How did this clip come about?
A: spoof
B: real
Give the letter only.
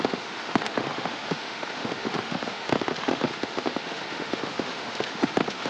A